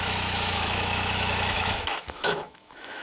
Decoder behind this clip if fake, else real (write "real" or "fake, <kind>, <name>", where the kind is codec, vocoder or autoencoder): fake, autoencoder, DAC-VAE